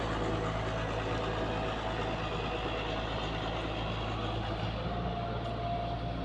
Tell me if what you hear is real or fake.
real